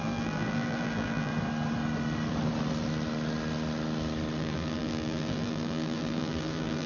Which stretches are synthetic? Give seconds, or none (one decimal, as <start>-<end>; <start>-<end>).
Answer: 0.0-1.3; 4.4-6.9